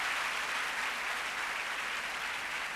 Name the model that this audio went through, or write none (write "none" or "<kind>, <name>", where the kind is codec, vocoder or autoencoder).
none